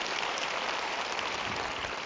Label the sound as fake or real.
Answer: fake